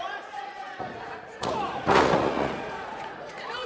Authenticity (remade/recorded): remade